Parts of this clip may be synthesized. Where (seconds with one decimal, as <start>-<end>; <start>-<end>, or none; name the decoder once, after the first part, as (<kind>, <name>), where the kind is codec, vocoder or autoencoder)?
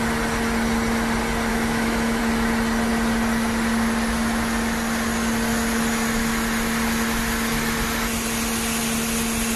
1.5-2.2 (autoencoder, DAC-VAE)